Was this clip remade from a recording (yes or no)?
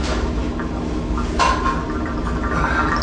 no